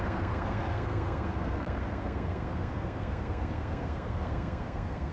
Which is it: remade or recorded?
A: remade